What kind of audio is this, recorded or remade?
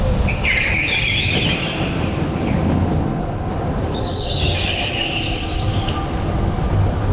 recorded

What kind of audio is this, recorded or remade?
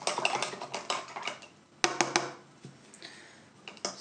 recorded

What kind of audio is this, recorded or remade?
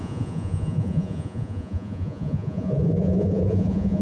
remade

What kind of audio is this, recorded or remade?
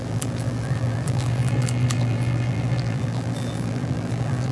remade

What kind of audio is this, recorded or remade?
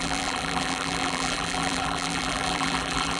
remade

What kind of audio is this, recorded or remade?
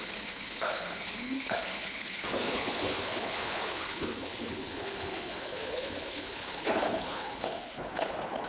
remade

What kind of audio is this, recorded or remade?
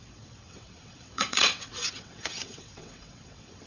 remade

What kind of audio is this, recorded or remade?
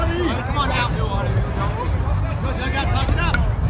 recorded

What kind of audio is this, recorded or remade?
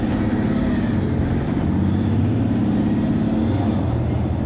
recorded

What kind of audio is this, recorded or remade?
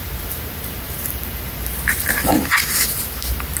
remade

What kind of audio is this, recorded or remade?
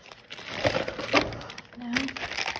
recorded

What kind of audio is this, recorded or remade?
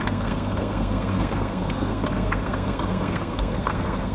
remade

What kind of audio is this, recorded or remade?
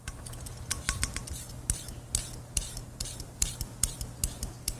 recorded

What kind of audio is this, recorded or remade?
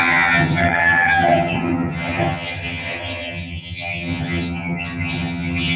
remade